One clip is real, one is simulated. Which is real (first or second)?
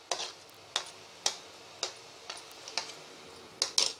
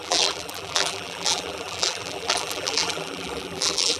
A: first